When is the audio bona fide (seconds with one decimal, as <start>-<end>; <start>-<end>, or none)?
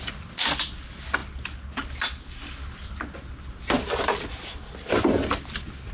0.0-5.9